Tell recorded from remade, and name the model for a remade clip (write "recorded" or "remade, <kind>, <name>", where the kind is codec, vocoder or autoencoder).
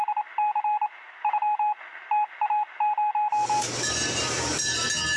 recorded